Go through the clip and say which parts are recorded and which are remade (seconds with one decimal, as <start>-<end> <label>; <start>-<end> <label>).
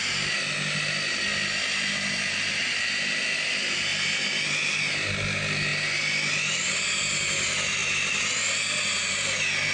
0.0-9.7 recorded